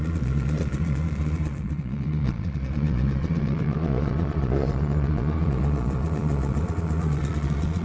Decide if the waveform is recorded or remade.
remade